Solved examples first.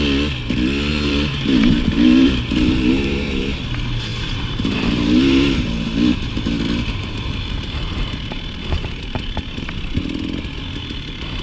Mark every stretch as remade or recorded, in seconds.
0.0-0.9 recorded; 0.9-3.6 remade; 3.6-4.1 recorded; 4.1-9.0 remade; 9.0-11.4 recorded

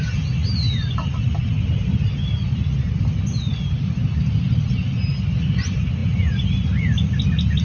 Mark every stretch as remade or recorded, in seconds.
0.0-7.6 recorded

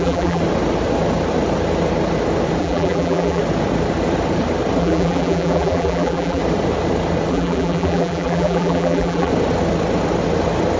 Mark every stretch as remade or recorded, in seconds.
0.0-0.4 remade; 0.4-2.6 recorded; 2.6-3.4 remade; 3.4-4.8 recorded; 4.8-6.4 remade; 6.4-7.3 recorded; 7.3-9.3 remade; 9.3-10.8 recorded

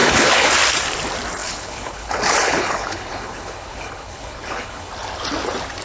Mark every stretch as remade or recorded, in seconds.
0.0-0.5 remade; 0.5-1.4 recorded; 1.4-4.9 remade; 4.9-5.8 recorded

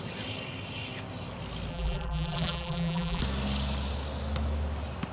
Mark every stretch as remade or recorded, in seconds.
0.0-1.7 recorded; 1.7-3.2 remade; 3.2-5.1 recorded

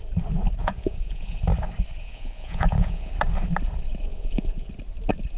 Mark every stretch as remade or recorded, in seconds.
0.0-0.6 recorded; 0.6-1.4 remade; 1.4-2.0 recorded; 2.0-3.1 remade; 3.1-4.1 recorded; 4.1-4.7 remade; 4.7-5.4 recorded

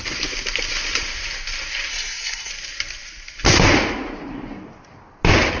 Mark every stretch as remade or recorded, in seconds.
0.0-1.9 recorded; 1.9-2.5 remade; 2.5-5.6 recorded

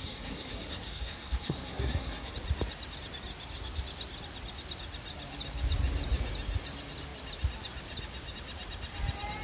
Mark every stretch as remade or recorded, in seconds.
0.0-2.3 remade; 2.3-9.4 recorded